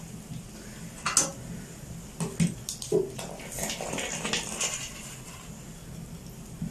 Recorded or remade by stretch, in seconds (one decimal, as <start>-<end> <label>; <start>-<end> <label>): 0.0-6.7 recorded